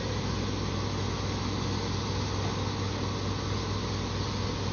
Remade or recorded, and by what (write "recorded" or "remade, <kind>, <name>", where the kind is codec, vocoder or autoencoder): recorded